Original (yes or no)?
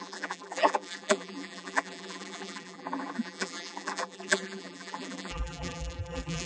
no